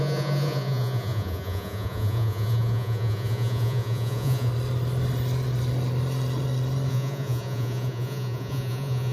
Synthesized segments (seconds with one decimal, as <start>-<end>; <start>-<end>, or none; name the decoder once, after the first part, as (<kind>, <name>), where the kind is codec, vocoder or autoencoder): 0.0-4.5 (vocoder, Vocos); 6.9-9.1